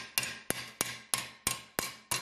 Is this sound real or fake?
real